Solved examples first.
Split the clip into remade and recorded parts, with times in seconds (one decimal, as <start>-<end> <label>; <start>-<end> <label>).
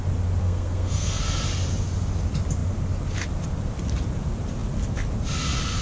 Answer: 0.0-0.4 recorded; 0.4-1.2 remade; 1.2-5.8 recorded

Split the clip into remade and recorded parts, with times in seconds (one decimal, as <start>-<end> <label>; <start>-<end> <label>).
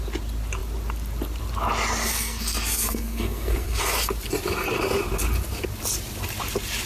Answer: 0.0-2.1 recorded; 2.1-3.8 remade; 3.8-6.9 recorded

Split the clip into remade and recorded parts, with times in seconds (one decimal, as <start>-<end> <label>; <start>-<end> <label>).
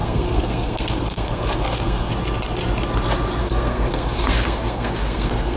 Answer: 0.0-2.1 remade; 2.1-3.4 recorded; 3.4-5.6 remade